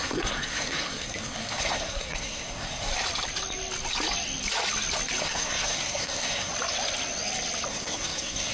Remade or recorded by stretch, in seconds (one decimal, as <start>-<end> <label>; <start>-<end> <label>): 0.0-2.9 remade; 2.9-5.2 recorded; 5.2-6.5 remade; 6.5-7.7 recorded; 7.7-8.5 remade